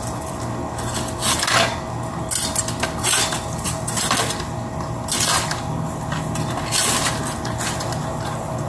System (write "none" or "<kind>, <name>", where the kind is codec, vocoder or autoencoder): none